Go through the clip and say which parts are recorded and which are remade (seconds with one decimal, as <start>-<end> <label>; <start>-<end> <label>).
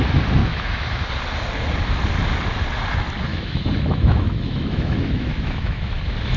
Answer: 0.0-0.4 recorded; 0.4-1.1 remade; 1.1-3.3 recorded; 3.3-6.0 remade; 6.0-6.4 recorded